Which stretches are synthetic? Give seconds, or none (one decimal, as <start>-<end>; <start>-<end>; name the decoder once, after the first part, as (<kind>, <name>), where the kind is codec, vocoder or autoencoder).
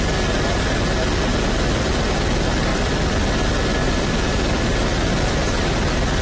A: 1.3-1.9 (vocoder, BigVGAN v2); 2.7-3.3; 3.8-5.6